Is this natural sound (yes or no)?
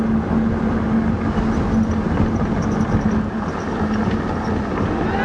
yes